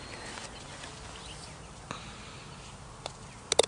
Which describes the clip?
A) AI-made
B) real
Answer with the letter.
B